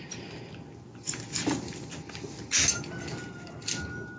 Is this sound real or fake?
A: real